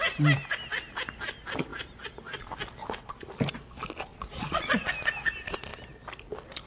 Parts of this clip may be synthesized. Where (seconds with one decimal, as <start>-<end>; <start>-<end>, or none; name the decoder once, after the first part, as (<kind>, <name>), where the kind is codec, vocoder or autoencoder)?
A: 4.1-4.9 (vocoder, Vocos)